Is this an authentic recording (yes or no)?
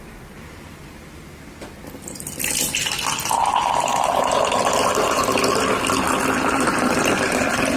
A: no